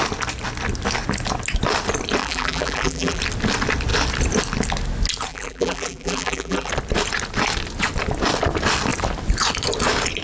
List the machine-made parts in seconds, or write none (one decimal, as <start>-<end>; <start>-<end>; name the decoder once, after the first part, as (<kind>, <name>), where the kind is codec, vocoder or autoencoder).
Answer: 2.2-3.2 (vocoder, BigVGAN v2); 5.3-6.7